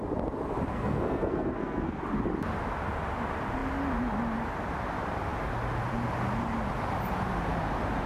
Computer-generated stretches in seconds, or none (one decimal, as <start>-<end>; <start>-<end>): 0.7-2.0